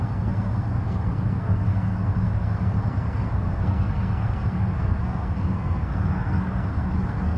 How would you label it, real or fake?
fake